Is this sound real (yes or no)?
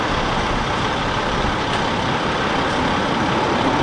yes